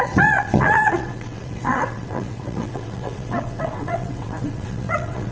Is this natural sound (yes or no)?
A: no